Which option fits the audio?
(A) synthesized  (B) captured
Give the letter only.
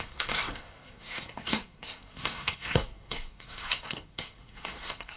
A